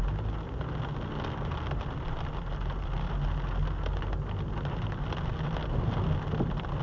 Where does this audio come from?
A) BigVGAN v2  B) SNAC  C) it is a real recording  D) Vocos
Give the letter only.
C